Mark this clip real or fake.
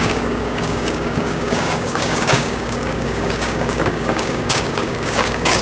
fake